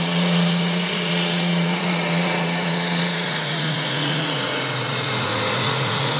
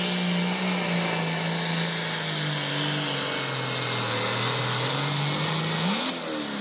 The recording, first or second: second